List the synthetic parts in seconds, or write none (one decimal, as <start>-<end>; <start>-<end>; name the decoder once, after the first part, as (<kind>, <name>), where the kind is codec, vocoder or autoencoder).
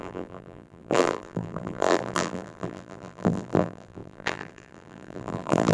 0.0-5.7 (vocoder, BigVGAN v2)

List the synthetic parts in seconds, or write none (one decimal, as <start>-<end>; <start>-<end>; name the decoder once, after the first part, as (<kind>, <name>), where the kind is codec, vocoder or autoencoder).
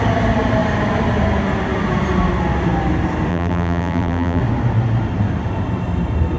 3.3-4.4 (vocoder, BigVGAN v2)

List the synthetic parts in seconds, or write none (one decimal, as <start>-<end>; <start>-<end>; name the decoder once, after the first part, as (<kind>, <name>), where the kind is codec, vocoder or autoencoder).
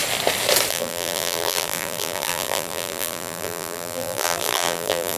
0.7-5.2 (vocoder, BigVGAN v2)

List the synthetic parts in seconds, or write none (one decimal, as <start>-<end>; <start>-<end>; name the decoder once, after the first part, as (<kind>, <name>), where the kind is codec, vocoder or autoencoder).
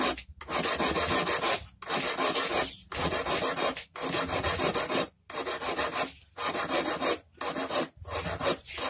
2.8-5.4 (vocoder, BigVGAN v2)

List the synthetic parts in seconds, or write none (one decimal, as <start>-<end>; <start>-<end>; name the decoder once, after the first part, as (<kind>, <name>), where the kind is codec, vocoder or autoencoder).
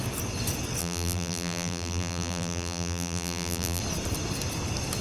0.8-3.8 (vocoder, BigVGAN v2)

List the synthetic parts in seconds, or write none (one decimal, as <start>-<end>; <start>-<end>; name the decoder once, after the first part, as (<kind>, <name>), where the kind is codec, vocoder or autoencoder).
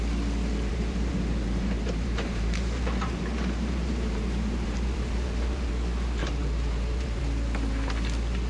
0.7-5.7 (vocoder, BigVGAN v2); 6.2-7.2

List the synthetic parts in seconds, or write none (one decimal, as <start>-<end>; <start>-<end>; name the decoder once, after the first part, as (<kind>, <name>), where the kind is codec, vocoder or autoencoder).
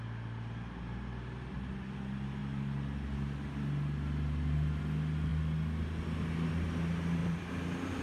7.2-8.0 (vocoder, BigVGAN v2)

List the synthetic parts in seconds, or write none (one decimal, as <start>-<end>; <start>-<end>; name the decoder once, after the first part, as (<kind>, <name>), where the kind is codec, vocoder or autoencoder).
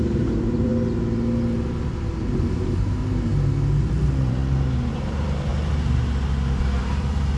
0.0-0.7 (vocoder, BigVGAN v2); 2.5-3.0; 3.8-4.4; 4.9-5.5; 6.8-7.4